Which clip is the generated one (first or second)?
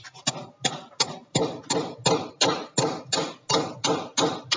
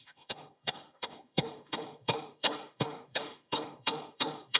second